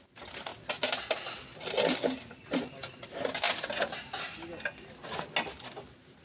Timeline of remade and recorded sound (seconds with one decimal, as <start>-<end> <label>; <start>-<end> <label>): 0.0-6.2 recorded